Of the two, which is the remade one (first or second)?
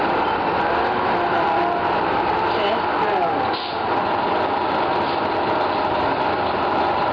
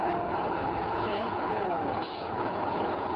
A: second